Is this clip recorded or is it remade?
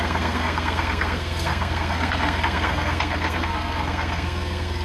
remade